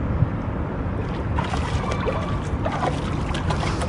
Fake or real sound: real